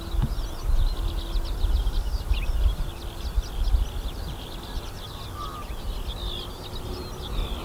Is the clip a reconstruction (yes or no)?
no